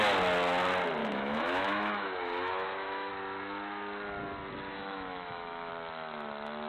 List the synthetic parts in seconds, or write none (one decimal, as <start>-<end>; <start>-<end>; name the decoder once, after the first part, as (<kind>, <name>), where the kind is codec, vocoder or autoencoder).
1.0-3.1 (autoencoder, DAC-VAE); 4.7-5.7

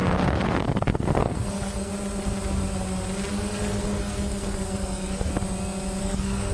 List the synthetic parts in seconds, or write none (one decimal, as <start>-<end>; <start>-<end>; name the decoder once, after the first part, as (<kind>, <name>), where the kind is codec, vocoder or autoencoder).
0.0-1.9 (codec, SNAC); 3.3-5.3; 6.0-6.5

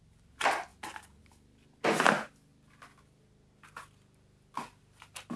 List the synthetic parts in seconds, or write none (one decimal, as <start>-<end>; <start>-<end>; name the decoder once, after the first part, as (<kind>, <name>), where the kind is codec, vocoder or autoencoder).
none